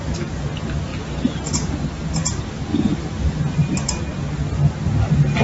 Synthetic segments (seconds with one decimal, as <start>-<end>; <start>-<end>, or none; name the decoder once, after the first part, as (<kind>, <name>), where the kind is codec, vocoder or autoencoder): none